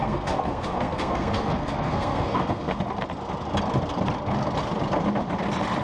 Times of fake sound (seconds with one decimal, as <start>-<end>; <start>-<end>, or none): 0.0-2.8